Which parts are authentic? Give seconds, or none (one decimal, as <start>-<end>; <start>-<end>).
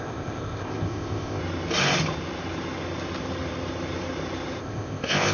1.4-4.6